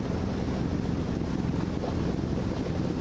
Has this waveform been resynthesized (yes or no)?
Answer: no